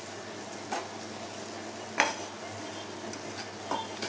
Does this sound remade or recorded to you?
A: recorded